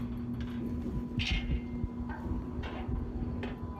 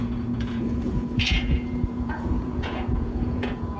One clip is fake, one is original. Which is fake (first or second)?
second